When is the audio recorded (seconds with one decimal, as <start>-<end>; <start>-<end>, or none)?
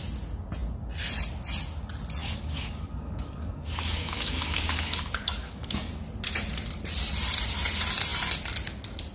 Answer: 0.0-2.2; 5.9-9.1